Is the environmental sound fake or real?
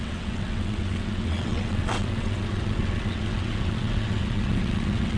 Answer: fake